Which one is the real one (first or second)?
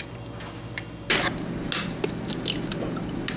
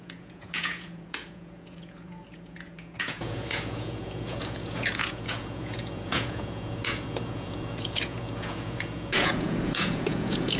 first